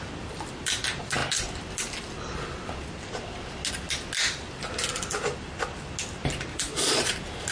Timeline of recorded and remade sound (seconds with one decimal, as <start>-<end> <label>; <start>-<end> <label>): 0.0-6.5 recorded; 6.5-7.1 remade; 7.1-7.5 recorded

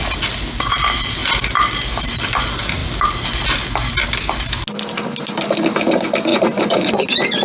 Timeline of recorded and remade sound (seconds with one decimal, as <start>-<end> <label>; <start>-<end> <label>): 0.0-6.3 recorded; 6.3-6.9 remade; 6.9-7.4 recorded